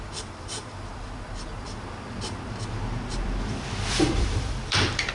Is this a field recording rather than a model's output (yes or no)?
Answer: no